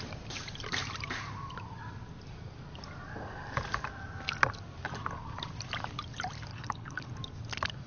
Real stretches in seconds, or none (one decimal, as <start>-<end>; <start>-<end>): 0.0-6.5; 7.1-7.9